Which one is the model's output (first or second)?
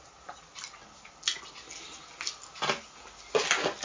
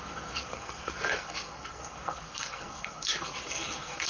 second